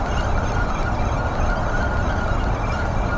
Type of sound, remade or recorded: recorded